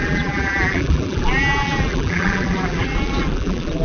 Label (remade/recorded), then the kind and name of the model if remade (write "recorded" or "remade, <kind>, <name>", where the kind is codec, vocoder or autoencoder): remade, vocoder, BigVGAN v2